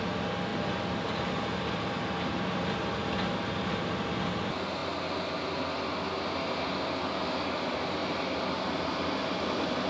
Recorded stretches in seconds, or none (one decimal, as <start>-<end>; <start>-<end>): 0.0-9.9